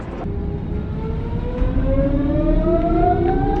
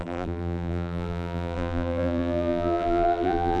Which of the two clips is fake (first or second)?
second